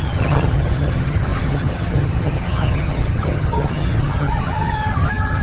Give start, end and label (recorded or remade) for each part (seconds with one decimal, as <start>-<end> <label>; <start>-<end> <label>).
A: 0.0-5.4 remade